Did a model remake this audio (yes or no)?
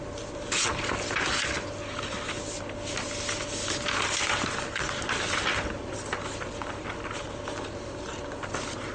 no